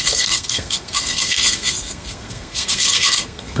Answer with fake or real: fake